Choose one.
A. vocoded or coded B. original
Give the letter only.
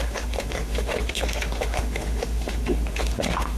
A